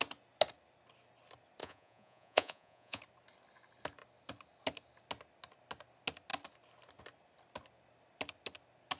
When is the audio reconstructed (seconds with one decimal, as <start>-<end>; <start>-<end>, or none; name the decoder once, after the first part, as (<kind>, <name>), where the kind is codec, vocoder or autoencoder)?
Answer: 1.6-3.0 (vocoder, Vocos)